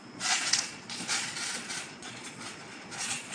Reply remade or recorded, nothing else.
remade